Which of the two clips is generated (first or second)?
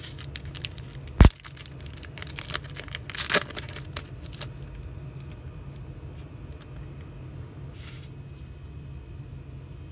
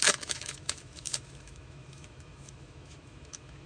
second